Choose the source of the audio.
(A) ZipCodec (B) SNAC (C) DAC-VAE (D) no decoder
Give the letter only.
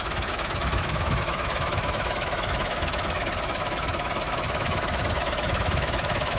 C